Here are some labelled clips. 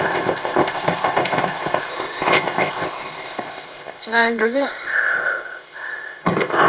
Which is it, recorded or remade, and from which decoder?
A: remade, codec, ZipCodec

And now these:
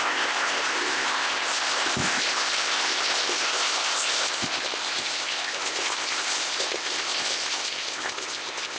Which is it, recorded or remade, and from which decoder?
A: remade, codec, ZipCodec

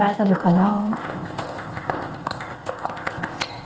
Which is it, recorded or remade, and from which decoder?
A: remade, codec, ZipCodec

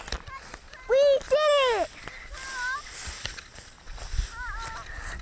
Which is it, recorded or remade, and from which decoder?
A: recorded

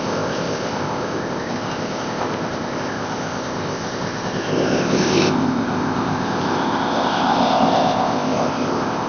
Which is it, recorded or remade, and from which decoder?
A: remade, codec, ZipCodec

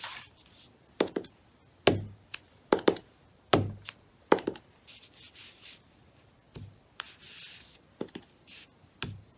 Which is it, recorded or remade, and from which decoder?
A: recorded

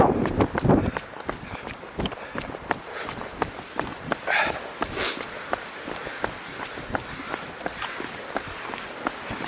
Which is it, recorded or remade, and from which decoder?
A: recorded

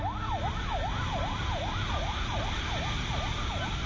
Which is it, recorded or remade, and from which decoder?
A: recorded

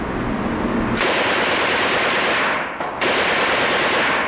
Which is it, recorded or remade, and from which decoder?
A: recorded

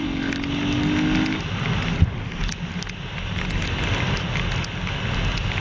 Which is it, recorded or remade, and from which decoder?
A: recorded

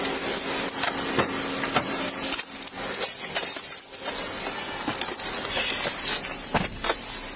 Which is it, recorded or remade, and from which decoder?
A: recorded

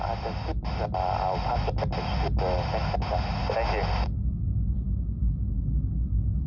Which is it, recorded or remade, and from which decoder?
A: recorded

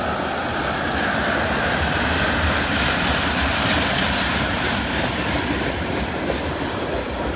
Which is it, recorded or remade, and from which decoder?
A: recorded